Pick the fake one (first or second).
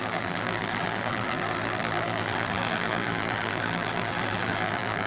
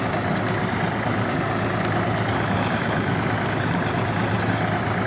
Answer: first